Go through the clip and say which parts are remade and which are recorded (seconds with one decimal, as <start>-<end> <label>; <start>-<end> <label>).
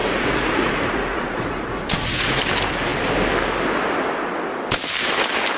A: 0.0-2.4 remade; 2.4-5.6 recorded